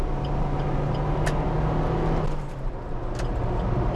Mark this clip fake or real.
real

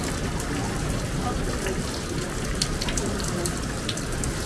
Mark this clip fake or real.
real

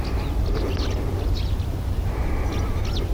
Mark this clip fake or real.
real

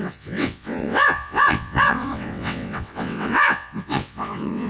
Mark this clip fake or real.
fake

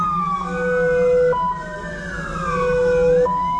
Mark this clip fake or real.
real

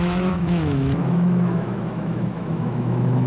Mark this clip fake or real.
fake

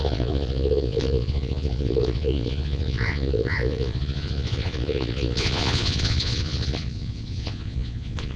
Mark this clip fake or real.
fake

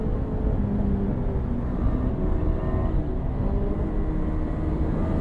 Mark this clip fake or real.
real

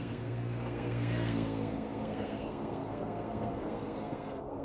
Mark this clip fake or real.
fake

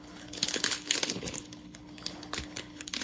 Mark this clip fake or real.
fake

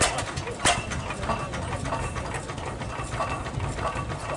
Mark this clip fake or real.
real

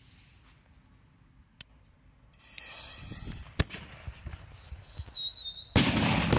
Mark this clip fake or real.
real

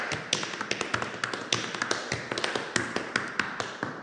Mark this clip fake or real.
real